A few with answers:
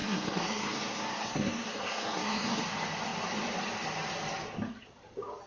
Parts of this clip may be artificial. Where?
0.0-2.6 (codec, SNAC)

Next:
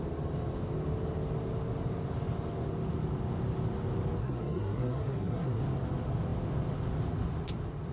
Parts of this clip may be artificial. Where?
4.2-5.6 (codec, SNAC)

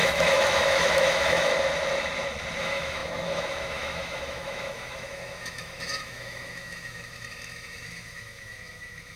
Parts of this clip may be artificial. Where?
0.0-1.5 (autoencoder, DAC-VAE); 2.6-9.2

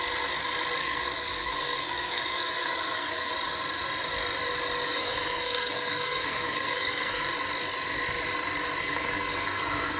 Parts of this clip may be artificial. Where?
0.8-3.3 (codec, SNAC); 5.0-7.2; 8.8-10.0

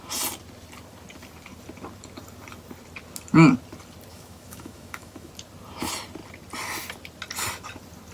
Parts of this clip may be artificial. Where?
4.1-5.3 (autoencoder, DAC-VAE)

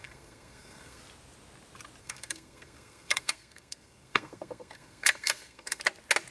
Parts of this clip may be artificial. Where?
0.0-1.0 (codec, SNAC); 2.0-5.8

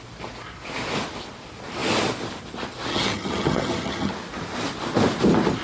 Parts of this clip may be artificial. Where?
2.9-4.1 (vocoder, HiFi-GAN)

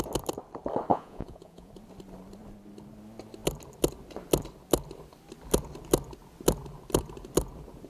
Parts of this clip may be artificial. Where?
0.9-1.7 (vocoder, Vocos)